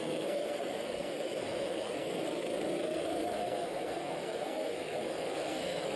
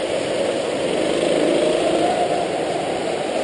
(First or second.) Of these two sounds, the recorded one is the second